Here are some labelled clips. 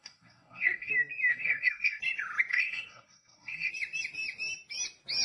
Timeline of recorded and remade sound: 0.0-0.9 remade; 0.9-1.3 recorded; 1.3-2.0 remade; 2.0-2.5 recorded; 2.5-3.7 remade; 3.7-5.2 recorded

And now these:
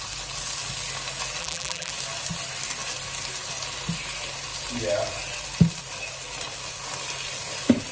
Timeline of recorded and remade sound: 0.0-1.4 recorded; 1.4-1.9 remade; 1.9-7.9 recorded